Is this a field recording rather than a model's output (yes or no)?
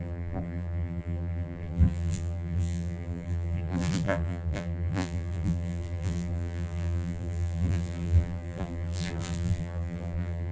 no